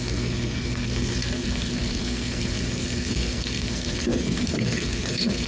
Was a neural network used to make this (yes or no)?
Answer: yes